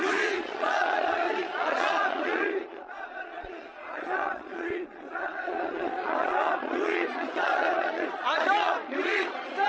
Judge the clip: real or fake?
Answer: fake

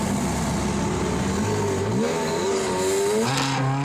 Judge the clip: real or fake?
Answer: real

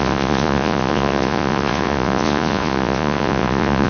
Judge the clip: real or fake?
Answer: fake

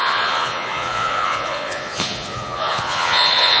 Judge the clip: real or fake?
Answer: fake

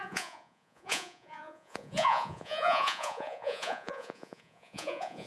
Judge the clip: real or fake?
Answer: fake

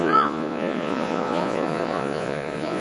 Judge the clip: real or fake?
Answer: fake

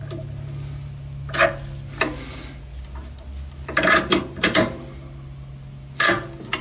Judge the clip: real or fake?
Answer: real